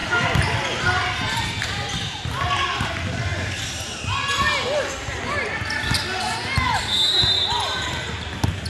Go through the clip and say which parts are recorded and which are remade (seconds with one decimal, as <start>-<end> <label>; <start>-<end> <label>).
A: 0.0-8.7 recorded